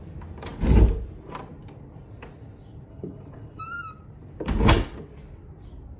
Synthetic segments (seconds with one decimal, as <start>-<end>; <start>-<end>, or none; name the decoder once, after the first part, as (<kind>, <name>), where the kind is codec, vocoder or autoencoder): 2.9-3.6 (codec, HILCodec)